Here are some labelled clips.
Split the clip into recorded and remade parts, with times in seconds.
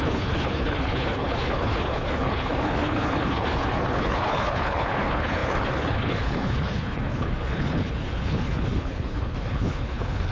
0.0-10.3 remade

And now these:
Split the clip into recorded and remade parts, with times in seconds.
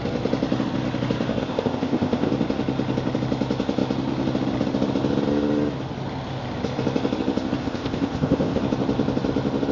0.0-1.4 recorded; 1.4-2.3 remade; 2.3-7.6 recorded; 7.6-8.6 remade; 8.6-9.7 recorded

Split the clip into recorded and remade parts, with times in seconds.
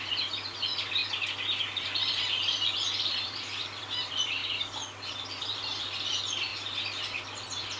0.0-1.0 remade; 1.0-1.6 recorded; 1.6-4.4 remade; 4.4-5.1 recorded; 5.1-6.5 remade; 6.5-7.8 recorded